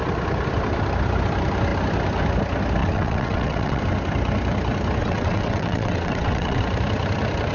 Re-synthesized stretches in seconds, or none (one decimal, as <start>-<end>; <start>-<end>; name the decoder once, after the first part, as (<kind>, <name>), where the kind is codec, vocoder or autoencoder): 2.8-3.8 (vocoder, WaveNeXt); 5.0-6.6